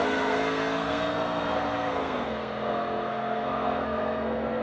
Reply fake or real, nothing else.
fake